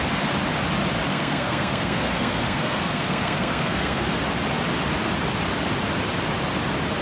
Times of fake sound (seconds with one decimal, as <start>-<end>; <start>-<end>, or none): 1.1-4.1